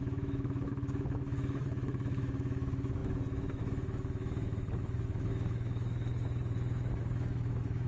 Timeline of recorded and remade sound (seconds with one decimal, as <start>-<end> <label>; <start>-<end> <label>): 0.0-7.9 remade